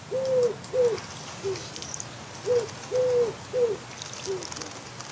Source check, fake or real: real